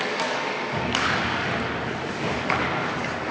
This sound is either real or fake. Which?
fake